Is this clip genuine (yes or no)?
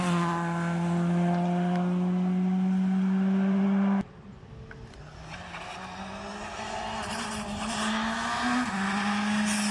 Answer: yes